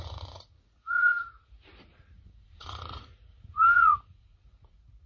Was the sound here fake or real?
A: fake